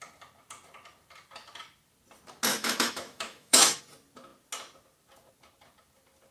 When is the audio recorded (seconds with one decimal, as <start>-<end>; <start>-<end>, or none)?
0.0-2.5; 3.8-6.3